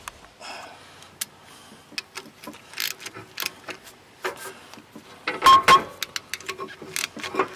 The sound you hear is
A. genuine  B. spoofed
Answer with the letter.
A